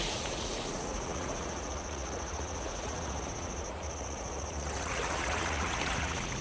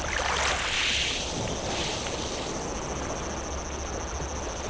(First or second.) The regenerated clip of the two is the first